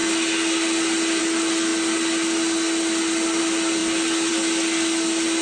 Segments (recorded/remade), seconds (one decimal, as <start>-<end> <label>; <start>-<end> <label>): 0.0-5.4 recorded